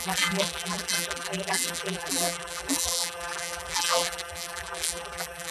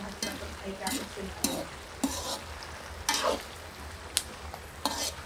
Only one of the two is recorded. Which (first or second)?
second